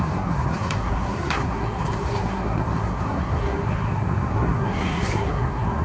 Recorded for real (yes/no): no